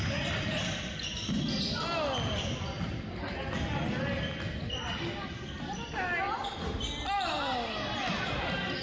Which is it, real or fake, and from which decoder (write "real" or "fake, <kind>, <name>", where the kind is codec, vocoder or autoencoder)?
real